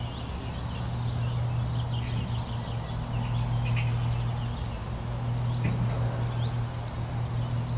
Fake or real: real